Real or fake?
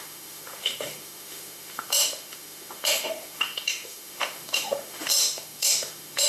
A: fake